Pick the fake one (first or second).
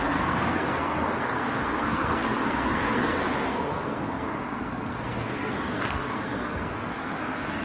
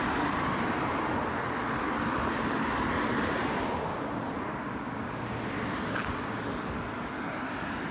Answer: first